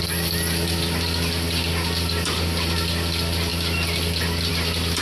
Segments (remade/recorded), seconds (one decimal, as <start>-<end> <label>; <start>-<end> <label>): 0.0-5.0 recorded

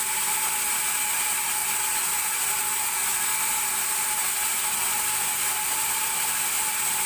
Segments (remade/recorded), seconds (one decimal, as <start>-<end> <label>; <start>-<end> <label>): 0.0-7.1 recorded

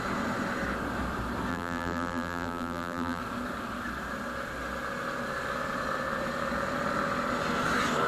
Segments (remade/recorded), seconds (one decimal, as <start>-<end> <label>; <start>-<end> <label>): 0.0-1.5 recorded; 1.5-3.2 remade; 3.2-8.1 recorded

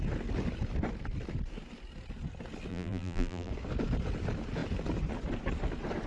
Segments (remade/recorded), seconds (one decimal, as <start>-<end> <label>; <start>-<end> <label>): 0.0-2.7 recorded; 2.7-3.5 remade; 3.5-6.1 recorded

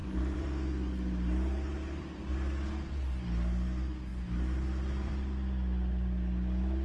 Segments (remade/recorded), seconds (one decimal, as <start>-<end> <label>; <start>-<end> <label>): 0.0-2.3 remade; 2.3-4.1 recorded; 4.1-5.1 remade; 5.1-6.8 recorded

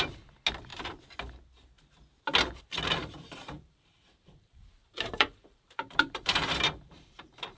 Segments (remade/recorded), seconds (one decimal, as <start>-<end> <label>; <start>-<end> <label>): 0.0-3.0 recorded; 3.0-7.6 remade